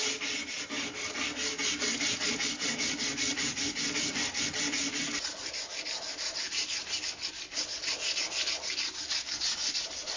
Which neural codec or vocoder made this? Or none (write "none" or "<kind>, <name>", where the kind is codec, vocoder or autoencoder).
none